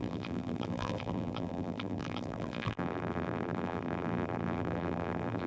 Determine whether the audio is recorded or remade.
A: remade